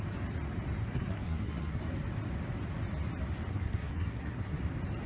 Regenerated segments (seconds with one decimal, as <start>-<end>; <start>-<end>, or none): 0.9-1.8; 3.5-4.6